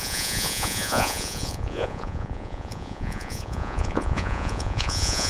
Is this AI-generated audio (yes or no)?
yes